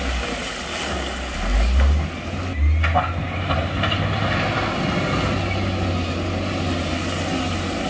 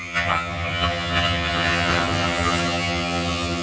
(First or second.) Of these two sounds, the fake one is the second